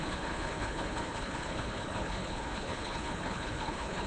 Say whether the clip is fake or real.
fake